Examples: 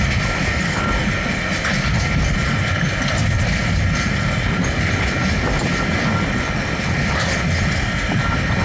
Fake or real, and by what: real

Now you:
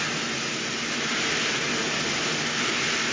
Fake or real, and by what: real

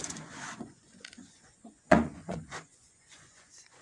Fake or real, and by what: fake, vocoder, Vocos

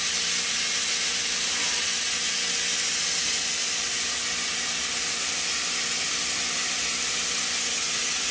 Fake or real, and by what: real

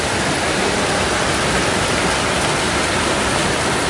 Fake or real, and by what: real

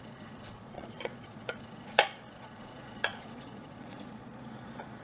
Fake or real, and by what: fake, vocoder, Vocos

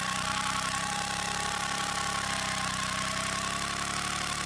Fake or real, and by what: real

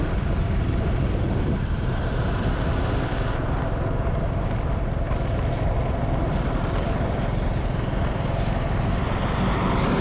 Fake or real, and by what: real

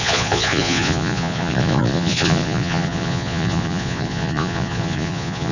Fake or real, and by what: fake, vocoder, Vocos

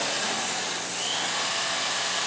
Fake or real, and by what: real